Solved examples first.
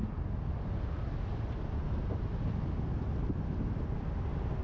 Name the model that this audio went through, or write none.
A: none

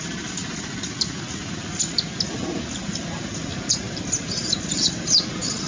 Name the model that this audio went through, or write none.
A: none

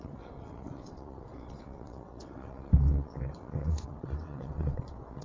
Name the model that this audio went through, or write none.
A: vocoder, WaveNeXt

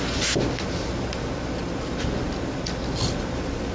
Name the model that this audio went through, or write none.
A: none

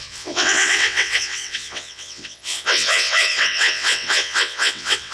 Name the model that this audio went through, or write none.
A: vocoder, WaveNeXt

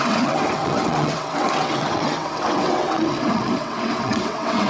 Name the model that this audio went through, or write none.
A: vocoder, WaveNeXt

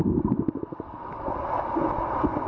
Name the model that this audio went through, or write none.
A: none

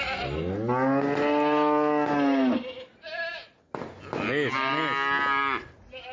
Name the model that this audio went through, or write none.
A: none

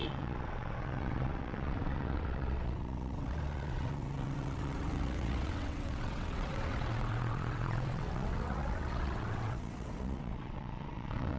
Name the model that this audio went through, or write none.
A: vocoder, WaveNeXt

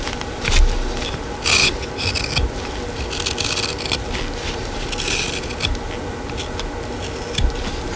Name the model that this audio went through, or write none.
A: none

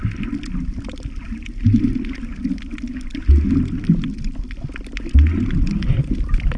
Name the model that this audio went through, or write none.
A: none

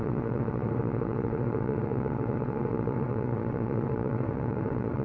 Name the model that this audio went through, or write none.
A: vocoder, WaveNeXt